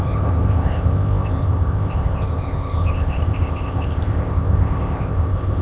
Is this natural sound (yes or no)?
no